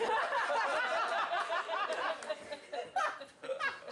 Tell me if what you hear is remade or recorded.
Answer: recorded